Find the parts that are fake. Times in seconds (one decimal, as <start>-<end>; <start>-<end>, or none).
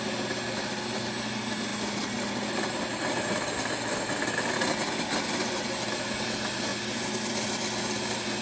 none